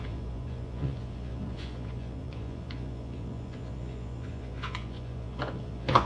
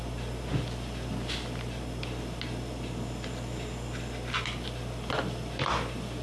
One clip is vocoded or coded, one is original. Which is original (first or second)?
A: second